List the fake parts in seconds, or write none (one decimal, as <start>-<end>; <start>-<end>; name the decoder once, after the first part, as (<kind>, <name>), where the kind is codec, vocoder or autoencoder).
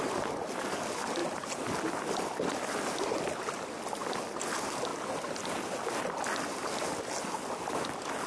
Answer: none